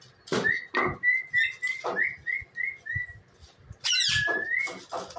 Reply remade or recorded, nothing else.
recorded